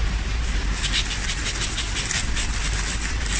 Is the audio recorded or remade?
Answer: recorded